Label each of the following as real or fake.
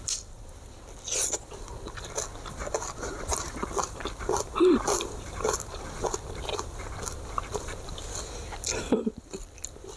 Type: fake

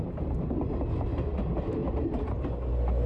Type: real